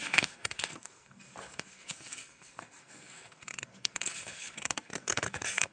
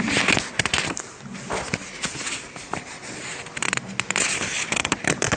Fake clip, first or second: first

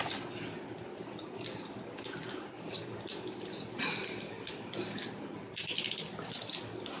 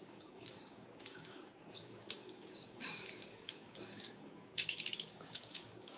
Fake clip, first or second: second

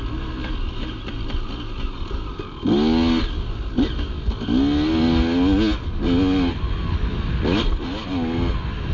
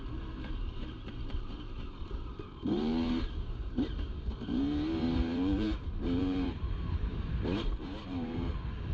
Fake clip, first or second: second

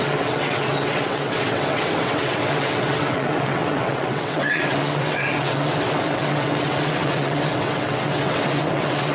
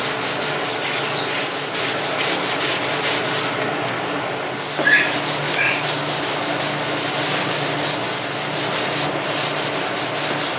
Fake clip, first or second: first